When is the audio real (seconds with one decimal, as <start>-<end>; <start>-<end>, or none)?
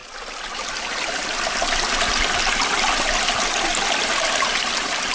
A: 0.0-5.1